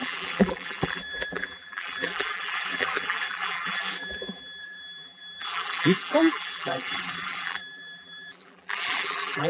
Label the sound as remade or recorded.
remade